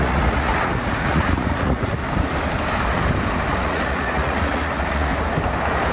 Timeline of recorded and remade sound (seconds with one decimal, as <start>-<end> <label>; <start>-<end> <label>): 0.0-2.0 remade; 2.0-3.5 recorded; 3.5-5.1 remade; 5.1-5.9 recorded